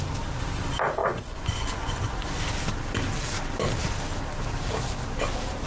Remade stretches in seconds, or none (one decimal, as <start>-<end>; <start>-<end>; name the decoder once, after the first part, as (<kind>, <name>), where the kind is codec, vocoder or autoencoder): 1.0-2.3 (vocoder, Vocos)